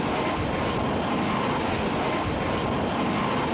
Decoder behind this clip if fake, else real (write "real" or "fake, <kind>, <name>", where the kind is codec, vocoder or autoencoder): real